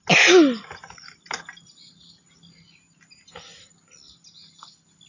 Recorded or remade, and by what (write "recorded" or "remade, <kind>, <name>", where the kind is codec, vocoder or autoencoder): recorded